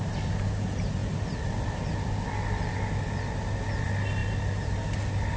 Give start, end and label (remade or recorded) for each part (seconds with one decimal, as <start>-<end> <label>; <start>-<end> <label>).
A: 0.0-5.4 recorded